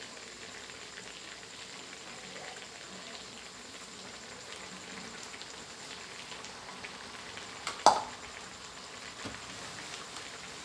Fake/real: real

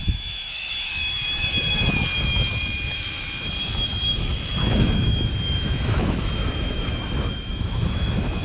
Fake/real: fake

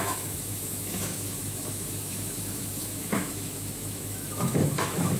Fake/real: fake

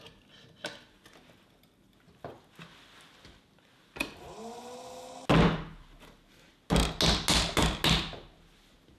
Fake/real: real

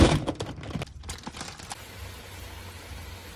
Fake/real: real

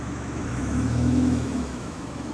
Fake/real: fake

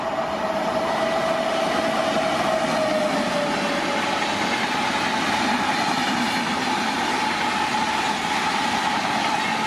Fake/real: real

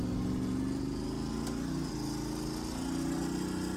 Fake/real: real